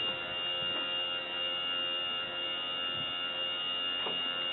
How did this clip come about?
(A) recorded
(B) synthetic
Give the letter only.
A